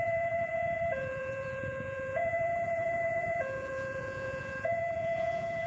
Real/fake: fake